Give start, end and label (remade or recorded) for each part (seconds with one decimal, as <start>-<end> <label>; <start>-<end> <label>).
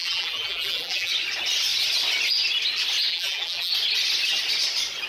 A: 0.0-1.1 remade; 1.1-3.1 recorded; 3.1-3.7 remade; 3.7-5.1 recorded